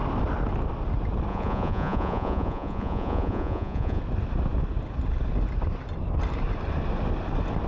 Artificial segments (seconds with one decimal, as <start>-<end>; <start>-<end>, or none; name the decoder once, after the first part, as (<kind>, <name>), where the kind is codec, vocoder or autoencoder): 1.3-4.0 (vocoder, Vocos)